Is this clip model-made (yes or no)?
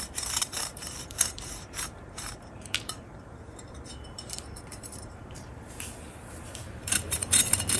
yes